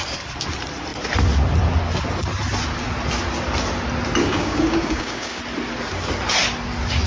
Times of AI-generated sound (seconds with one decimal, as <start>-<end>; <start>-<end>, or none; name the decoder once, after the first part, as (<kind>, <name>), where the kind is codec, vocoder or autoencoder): 4.2-5.4 (codec, DAC)